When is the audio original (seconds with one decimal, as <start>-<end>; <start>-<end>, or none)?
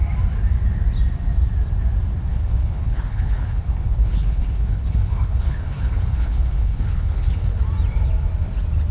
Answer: 0.0-2.3; 7.6-8.9